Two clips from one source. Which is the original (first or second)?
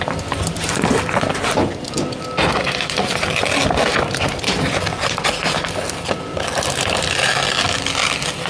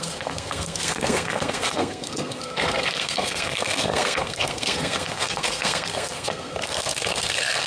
first